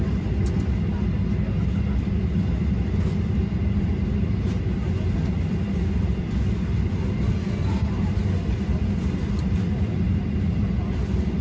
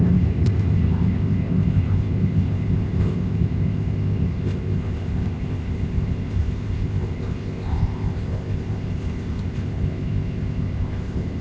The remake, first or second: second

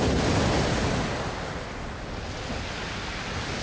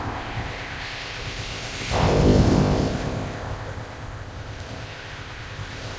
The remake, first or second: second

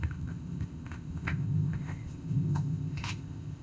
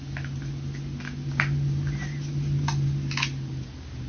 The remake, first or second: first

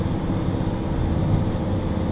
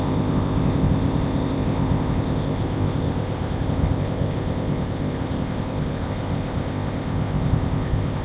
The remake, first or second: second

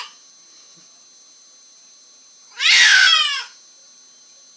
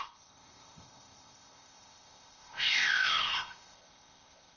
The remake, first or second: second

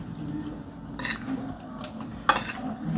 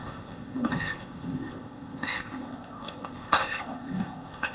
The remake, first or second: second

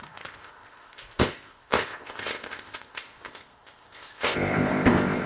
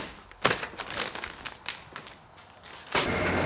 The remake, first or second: first